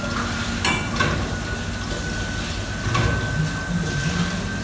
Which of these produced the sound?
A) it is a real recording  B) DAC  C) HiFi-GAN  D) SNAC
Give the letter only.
A